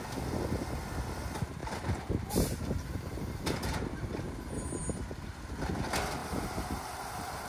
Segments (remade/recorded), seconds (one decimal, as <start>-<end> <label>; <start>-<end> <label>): 0.0-1.6 recorded; 1.6-3.8 remade; 3.8-6.2 recorded; 6.2-7.5 remade